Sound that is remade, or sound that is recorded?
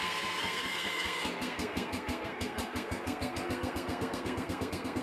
remade